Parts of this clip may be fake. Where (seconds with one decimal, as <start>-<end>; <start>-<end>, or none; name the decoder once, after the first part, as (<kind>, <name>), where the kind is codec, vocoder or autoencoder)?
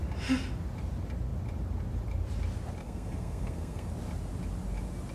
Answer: 2.8-3.9 (codec, SNAC)